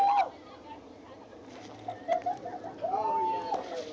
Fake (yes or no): no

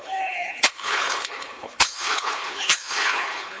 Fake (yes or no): yes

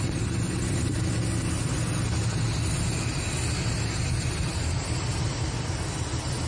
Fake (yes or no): no